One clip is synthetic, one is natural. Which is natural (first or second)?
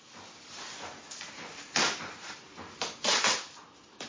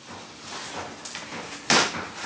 second